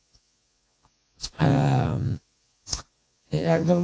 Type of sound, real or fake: fake